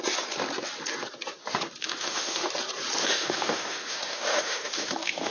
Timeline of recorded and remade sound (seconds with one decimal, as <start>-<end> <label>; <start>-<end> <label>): 0.0-1.8 recorded; 1.8-2.4 remade; 2.4-3.0 recorded; 3.0-5.3 remade